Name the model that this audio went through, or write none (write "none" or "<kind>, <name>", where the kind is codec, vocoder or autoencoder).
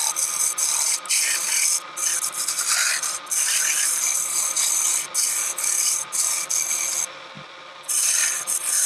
none